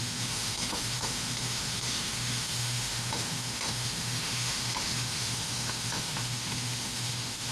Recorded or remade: remade